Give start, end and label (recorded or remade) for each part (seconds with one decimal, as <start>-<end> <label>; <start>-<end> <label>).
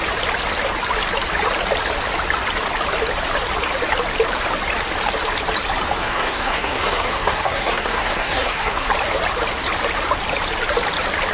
0.0-6.0 recorded; 6.0-8.9 remade; 8.9-11.3 recorded